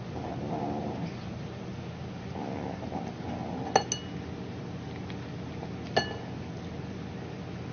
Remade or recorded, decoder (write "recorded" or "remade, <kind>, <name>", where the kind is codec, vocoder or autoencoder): recorded